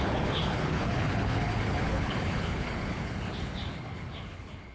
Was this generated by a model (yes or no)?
yes